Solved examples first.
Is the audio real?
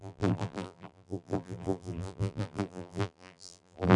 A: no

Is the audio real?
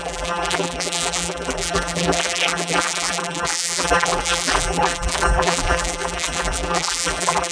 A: no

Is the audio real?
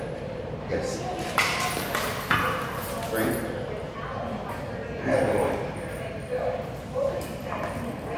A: no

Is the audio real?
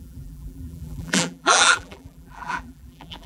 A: no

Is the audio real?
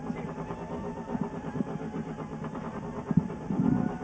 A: no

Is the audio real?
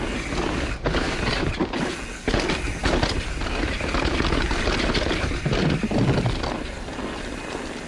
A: yes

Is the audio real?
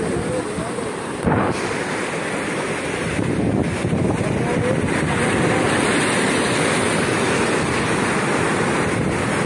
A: yes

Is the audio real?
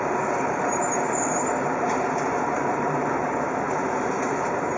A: no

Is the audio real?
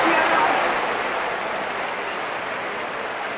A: yes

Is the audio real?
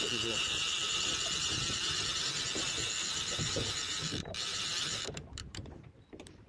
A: no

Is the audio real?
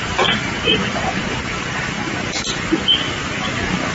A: yes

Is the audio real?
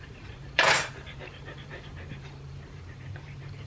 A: no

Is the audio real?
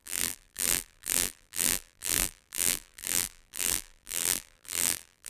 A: no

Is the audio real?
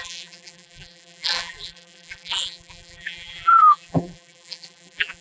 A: no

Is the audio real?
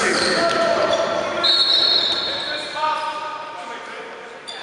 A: no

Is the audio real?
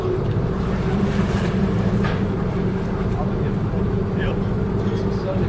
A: no